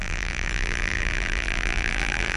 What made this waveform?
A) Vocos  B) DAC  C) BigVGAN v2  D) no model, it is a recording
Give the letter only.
C